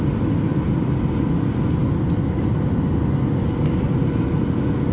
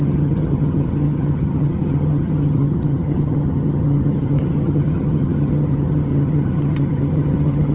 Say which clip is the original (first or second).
first